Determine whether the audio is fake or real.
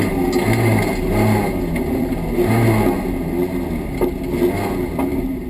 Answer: real